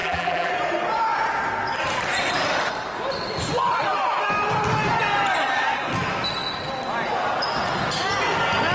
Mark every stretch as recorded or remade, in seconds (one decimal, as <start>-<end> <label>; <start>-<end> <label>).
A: 0.0-0.5 remade; 0.5-8.7 recorded